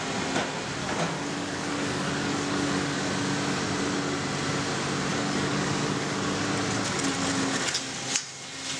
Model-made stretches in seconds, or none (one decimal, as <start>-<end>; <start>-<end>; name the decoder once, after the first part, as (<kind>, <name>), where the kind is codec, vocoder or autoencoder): 0.8-3.1 (codec, DAC); 5.1-6.4